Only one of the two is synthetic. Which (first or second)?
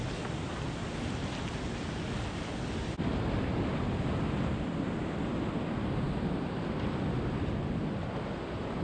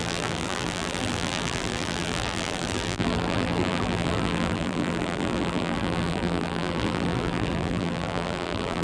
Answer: second